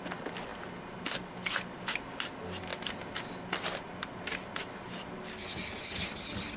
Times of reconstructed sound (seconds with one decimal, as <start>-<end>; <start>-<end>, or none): none